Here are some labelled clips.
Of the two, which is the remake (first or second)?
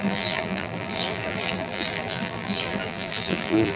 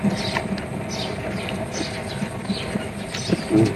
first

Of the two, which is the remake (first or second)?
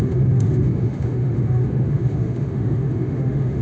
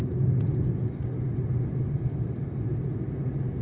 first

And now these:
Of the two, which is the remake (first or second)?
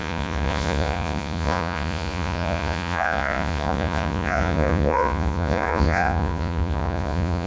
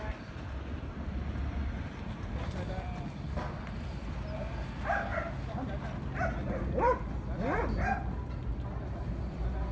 first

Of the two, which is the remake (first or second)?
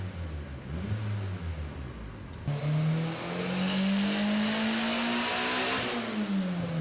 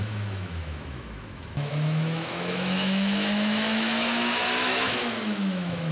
second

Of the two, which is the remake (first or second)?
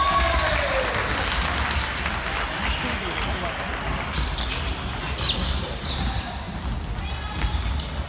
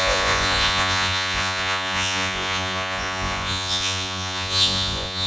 second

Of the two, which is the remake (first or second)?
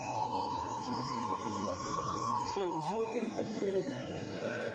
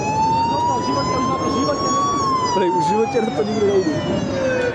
first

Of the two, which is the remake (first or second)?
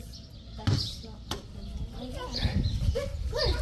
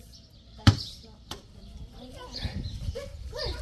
second